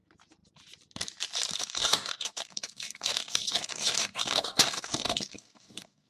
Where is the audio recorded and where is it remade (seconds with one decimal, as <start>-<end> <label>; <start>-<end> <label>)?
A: 0.0-1.6 recorded; 1.6-6.1 remade